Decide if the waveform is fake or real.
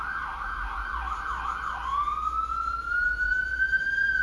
real